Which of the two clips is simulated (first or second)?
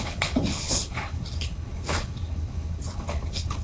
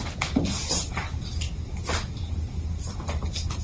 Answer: first